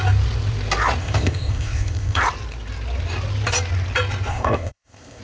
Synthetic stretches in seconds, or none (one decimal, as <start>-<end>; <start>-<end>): 1.0-2.2; 4.3-5.2